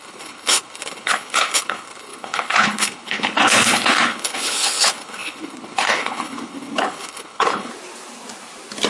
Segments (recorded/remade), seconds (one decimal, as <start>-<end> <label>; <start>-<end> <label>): 0.0-7.7 remade; 7.7-8.9 recorded